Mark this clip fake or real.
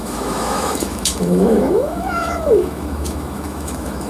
fake